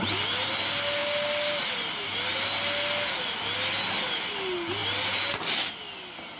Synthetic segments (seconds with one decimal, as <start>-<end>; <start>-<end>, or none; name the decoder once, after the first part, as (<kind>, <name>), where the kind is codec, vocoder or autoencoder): none